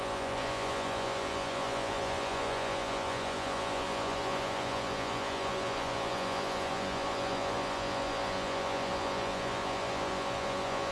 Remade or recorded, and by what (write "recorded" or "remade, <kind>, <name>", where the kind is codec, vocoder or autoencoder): remade, vocoder, Vocos